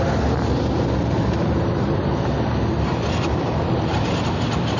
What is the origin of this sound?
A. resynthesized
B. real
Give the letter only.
B